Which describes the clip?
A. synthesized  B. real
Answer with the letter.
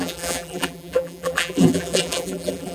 A